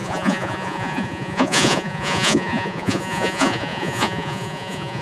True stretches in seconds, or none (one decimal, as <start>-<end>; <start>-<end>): none